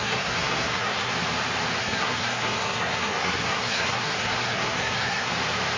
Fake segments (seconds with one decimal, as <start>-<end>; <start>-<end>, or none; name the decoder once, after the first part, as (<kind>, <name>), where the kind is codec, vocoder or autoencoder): 0.0-1.1 (codec, SNAC); 1.8-5.3